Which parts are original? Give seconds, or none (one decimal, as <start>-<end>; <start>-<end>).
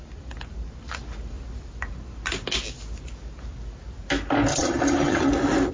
0.0-4.5; 5.3-5.7